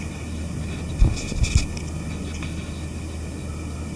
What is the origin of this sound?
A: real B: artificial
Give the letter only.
A